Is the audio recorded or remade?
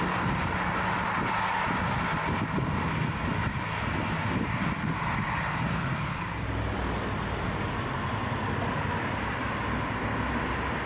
recorded